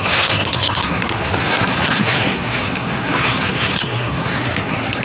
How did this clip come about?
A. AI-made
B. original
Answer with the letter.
A